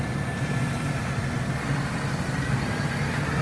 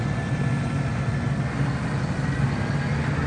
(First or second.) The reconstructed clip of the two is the first